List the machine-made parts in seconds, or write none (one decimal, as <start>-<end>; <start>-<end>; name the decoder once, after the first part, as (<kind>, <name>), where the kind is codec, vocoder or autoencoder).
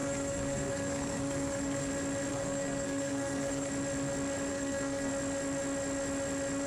0.0-1.9 (codec, SNAC); 2.3-3.7; 4.5-5.1